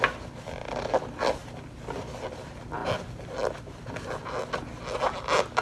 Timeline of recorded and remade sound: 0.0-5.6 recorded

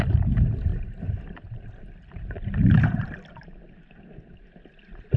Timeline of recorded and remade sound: 0.0-5.2 recorded

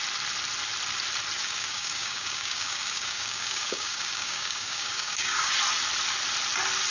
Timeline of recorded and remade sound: 0.0-1.4 recorded; 1.4-5.5 remade; 5.5-6.9 recorded

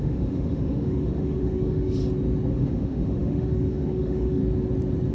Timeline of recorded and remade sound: 0.0-2.0 remade; 2.0-2.5 recorded; 2.5-4.4 remade; 4.4-5.1 recorded

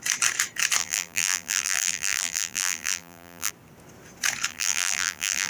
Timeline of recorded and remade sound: 0.0-0.8 recorded; 0.8-3.5 remade; 3.5-4.5 recorded; 4.5-5.5 remade

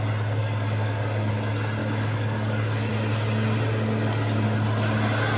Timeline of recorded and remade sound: 0.0-0.4 recorded; 0.4-1.3 remade; 1.3-1.8 recorded; 1.8-2.9 remade; 2.9-5.4 recorded

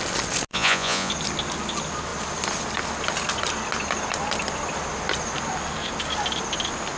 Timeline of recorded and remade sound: 0.0-0.5 recorded; 0.5-1.1 remade; 1.1-7.0 recorded